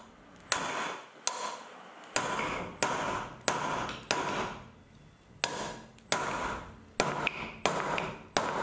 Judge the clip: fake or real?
real